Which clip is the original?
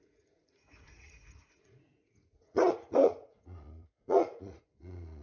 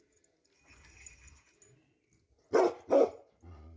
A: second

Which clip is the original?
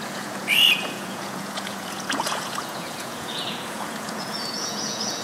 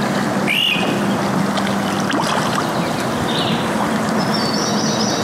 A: second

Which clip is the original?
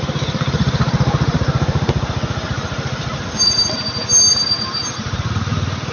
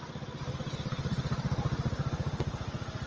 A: second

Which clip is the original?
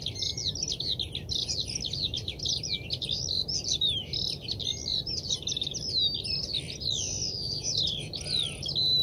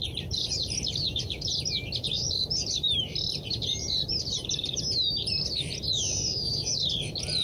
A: first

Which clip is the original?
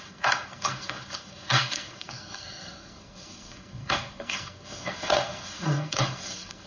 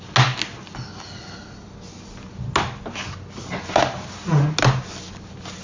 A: second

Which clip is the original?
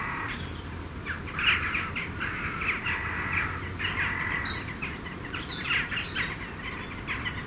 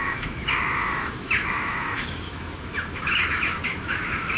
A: first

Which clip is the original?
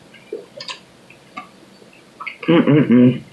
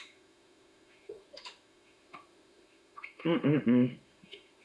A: first